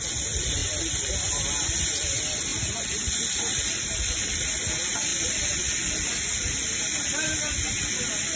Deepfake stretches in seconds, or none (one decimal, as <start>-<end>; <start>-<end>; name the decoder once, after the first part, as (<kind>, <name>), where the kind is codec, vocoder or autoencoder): none